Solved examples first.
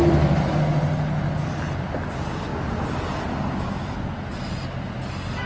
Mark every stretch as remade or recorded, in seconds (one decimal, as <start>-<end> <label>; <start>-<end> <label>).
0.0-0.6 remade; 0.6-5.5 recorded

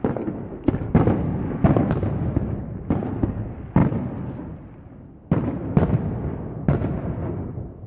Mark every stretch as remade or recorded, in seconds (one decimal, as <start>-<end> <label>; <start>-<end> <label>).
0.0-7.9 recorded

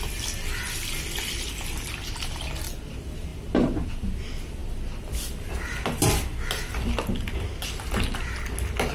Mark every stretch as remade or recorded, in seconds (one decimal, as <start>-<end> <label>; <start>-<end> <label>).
0.0-8.9 recorded

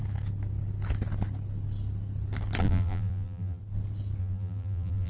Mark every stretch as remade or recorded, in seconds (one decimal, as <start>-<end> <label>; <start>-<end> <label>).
0.0-2.6 recorded; 2.6-3.6 remade; 3.6-4.2 recorded; 4.2-5.1 remade

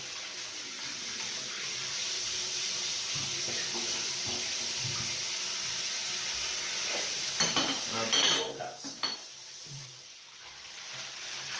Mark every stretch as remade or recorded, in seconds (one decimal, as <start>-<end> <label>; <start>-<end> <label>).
0.0-3.3 remade; 3.3-8.6 recorded; 8.6-11.6 remade

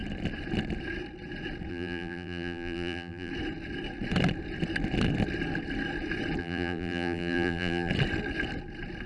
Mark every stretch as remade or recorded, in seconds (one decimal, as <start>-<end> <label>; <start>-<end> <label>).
0.0-1.7 recorded; 1.7-3.3 remade; 3.3-6.4 recorded; 6.4-7.9 remade; 7.9-9.1 recorded